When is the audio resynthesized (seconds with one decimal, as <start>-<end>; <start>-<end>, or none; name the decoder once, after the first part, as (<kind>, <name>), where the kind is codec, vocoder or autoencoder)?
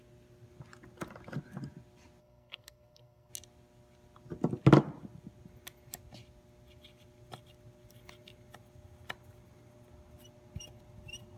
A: 2.2-3.3 (codec, SNAC)